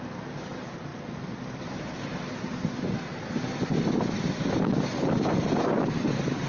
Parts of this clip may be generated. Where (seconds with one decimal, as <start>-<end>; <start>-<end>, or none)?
none